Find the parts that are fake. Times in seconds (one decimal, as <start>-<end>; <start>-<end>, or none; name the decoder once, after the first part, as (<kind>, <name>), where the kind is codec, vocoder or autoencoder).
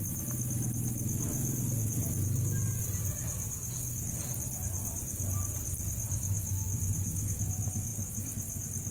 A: 1.3-5.6 (vocoder, BigVGAN v2)